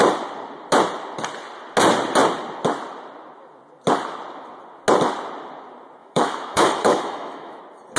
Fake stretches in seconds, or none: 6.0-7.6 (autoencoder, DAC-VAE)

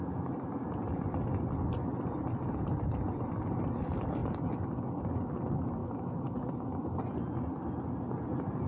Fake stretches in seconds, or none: 5.8-6.3 (autoencoder, DAC-VAE)